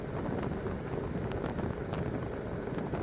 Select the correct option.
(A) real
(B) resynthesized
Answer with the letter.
A